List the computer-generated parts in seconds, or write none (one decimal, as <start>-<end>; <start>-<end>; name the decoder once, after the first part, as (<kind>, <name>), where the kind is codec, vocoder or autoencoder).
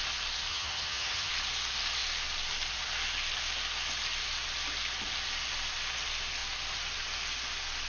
0.5-1.3 (vocoder, HiFi-GAN)